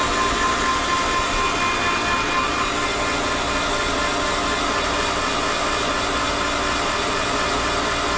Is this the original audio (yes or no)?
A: yes